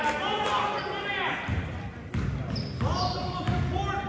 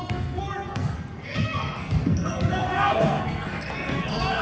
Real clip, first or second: first